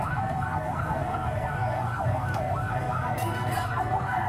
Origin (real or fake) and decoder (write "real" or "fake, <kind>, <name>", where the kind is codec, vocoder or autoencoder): fake, codec, SNAC